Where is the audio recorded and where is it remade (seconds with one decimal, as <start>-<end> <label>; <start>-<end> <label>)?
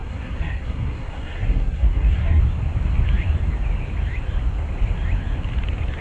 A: 0.0-2.4 remade; 2.4-6.0 recorded